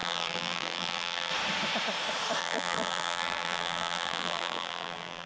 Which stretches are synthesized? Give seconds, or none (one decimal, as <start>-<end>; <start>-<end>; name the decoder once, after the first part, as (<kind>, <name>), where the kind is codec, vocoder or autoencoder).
0.0-1.3 (vocoder, BigVGAN v2); 2.4-5.3